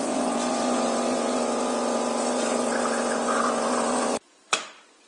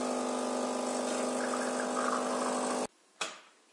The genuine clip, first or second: second